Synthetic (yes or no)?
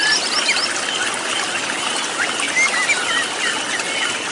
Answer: no